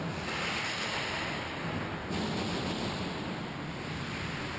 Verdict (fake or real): real